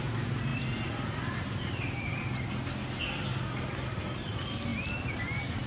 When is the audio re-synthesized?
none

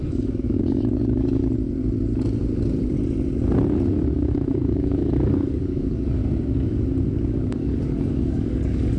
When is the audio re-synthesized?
0.0-1.4 (codec, DAC); 4.1-6.2; 7.3-9.0

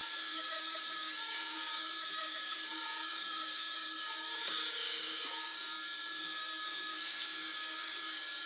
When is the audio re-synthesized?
0.0-8.5 (codec, DAC)